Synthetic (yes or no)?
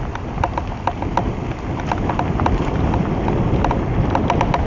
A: no